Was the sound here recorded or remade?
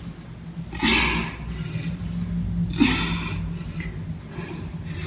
recorded